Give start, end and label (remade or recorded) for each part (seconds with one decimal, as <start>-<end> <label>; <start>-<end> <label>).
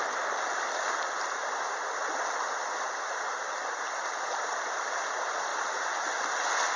0.0-6.8 recorded